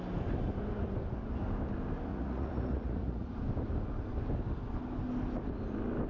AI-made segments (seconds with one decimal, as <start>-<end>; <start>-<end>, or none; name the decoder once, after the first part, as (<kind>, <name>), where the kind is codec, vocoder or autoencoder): 2.1-3.3 (vocoder, Vocos)